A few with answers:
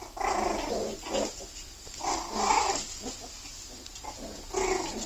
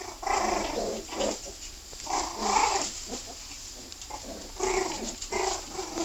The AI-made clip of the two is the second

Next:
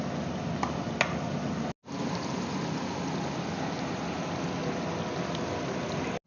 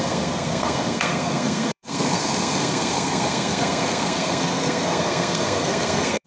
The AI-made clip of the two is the second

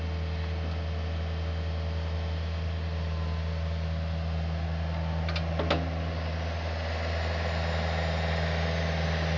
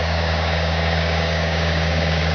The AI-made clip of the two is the second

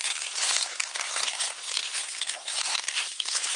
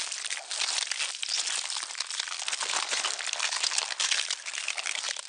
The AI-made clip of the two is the first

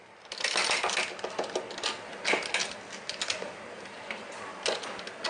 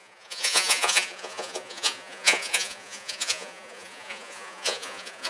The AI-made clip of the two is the second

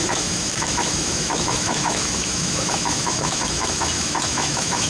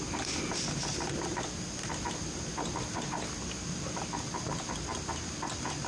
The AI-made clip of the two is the first